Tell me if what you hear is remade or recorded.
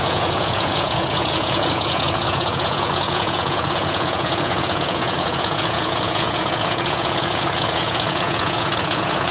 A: remade